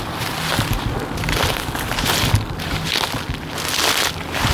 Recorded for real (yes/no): yes